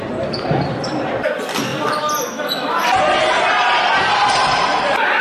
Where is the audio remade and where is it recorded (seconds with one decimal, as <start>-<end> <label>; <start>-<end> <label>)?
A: 0.0-1.7 remade; 1.7-4.8 recorded; 4.8-5.2 remade